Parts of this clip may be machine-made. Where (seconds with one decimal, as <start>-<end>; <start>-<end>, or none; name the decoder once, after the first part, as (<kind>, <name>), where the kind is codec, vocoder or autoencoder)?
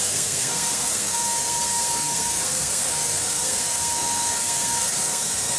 0.0-5.6 (codec, SNAC)